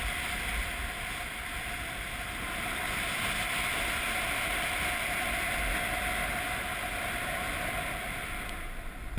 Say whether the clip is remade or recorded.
recorded